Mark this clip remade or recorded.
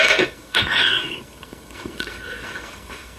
remade